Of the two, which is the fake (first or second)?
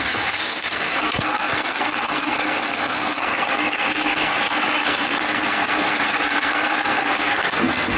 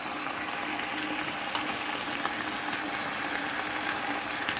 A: first